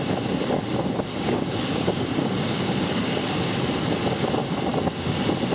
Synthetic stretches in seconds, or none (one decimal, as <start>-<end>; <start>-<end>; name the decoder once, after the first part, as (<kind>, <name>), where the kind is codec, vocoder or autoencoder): 1.1-3.2 (codec, DAC)

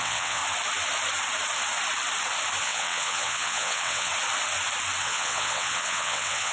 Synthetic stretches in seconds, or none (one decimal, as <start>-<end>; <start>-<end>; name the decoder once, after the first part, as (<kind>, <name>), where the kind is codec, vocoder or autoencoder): 0.0-0.4 (vocoder, WaveNeXt); 2.6-4.1; 5.0-6.5

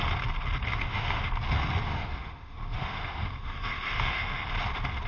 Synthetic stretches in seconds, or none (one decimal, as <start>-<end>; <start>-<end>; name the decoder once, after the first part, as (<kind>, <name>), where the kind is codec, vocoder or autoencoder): 0.7-1.3 (autoencoder, DAC-VAE); 1.9-4.5

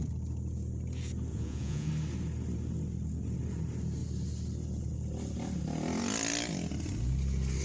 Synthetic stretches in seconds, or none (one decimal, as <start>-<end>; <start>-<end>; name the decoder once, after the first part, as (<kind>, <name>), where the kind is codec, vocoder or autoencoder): 1.3-1.9 (vocoder, Vocos)